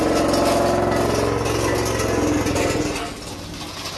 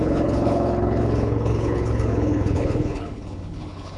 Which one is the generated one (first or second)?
second